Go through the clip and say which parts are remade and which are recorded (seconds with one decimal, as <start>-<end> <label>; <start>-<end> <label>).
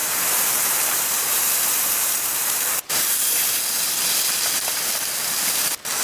0.0-3.6 remade; 3.6-6.0 recorded